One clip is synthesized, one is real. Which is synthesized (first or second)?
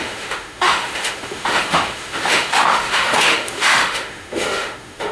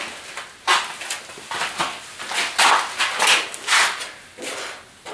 first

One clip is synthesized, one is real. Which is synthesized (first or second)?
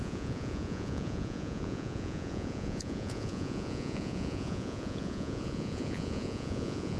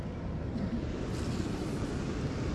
first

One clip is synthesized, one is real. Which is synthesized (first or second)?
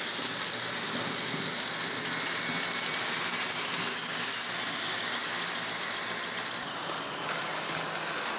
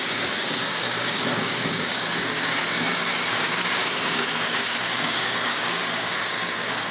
second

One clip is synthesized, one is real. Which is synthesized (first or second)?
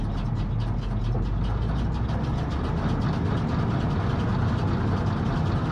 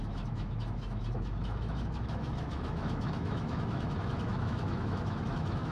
second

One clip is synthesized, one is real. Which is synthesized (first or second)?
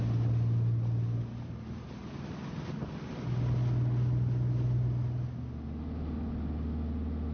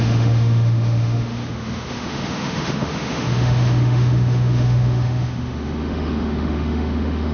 second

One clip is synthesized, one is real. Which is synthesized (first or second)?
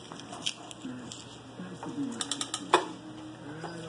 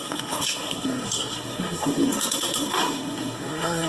second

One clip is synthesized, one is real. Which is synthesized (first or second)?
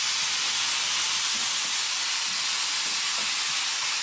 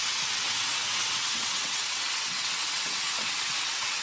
second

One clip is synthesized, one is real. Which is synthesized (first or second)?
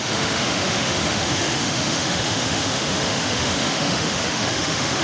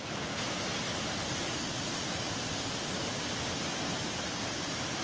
first